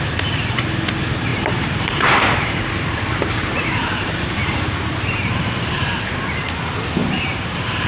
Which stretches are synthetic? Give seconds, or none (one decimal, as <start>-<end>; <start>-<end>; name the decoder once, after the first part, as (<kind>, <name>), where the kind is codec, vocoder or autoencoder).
1.3-6.0 (vocoder, BigVGAN v2); 7.0-7.9